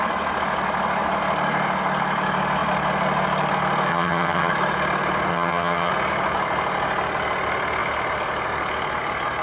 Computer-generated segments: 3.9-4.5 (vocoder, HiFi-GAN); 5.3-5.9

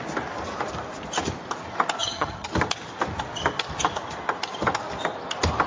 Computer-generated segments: 2.0-2.5 (vocoder, HiFi-GAN)

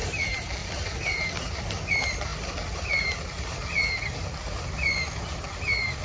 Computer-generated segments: none

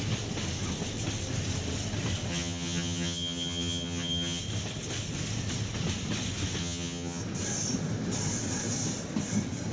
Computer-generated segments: 2.3-4.4 (vocoder, HiFi-GAN); 6.6-7.2

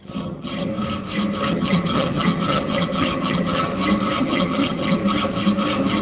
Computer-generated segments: 0.0-0.7 (vocoder, HiFi-GAN); 1.5-3.7; 4.2-5.0

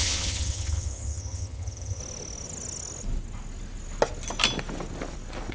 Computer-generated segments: 0.0-2.0 (vocoder, HiFi-GAN)

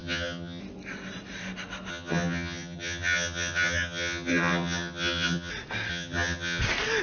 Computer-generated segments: 0.0-0.6 (vocoder, HiFi-GAN); 1.9-5.5; 5.9-6.6